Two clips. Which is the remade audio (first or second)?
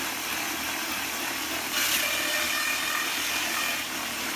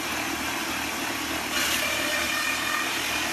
second